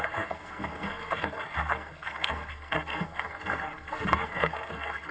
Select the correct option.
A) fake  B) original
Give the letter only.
A